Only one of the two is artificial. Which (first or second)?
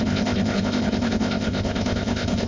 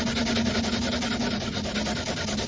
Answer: first